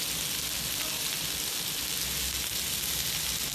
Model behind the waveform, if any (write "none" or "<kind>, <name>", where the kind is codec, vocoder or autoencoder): none